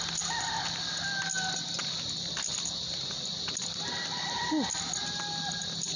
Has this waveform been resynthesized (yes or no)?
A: no